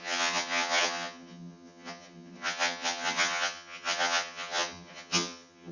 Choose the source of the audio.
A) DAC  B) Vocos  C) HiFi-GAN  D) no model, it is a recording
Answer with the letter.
C